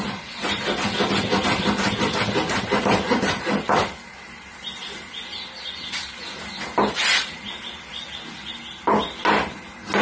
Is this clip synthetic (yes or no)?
no